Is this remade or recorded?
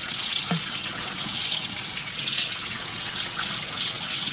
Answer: remade